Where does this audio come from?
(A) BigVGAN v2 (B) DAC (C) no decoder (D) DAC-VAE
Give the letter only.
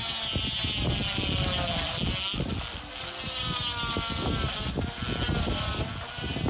C